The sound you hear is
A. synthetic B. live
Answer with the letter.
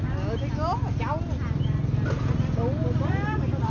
B